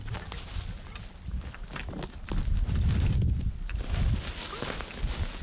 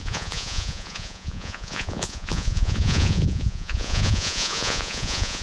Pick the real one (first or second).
first